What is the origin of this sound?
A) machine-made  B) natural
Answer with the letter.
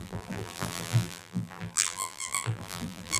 A